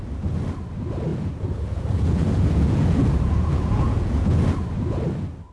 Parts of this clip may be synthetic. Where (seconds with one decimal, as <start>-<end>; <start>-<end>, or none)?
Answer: 1.1-4.4